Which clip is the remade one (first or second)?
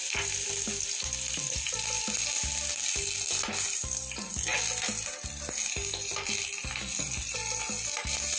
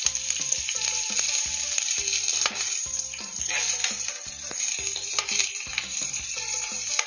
second